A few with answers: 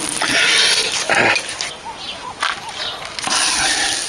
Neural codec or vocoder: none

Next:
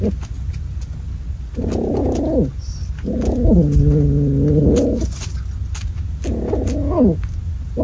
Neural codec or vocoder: none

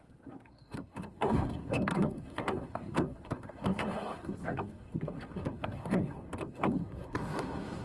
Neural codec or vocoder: codec, SNAC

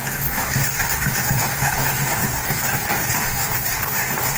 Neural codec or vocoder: codec, DAC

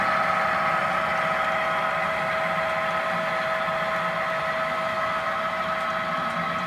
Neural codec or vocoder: none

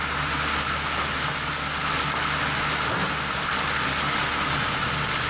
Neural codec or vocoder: none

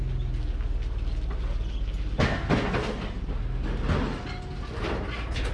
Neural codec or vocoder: none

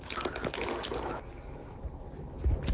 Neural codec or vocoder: none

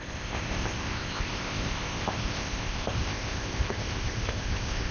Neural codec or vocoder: codec, ZipCodec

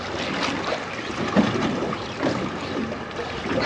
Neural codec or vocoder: none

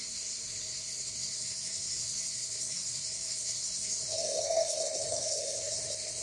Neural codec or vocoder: codec, SNAC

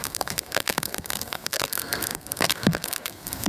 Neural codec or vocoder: codec, SNAC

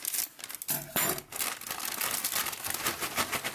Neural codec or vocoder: none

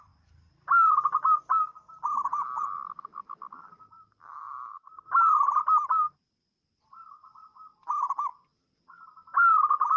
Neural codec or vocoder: none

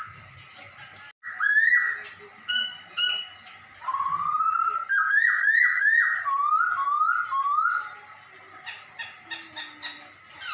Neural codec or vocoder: none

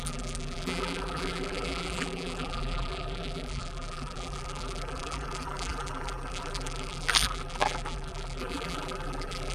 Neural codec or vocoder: vocoder, BigVGAN v2